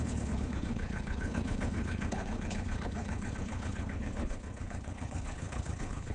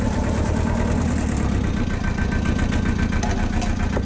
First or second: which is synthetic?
first